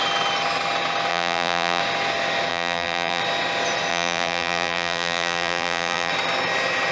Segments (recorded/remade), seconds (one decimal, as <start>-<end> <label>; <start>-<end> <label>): 0.0-1.1 recorded; 1.1-1.8 remade; 1.8-2.5 recorded; 2.5-3.2 remade; 3.2-3.9 recorded; 3.9-6.1 remade; 6.1-6.9 recorded